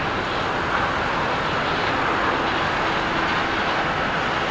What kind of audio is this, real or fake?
real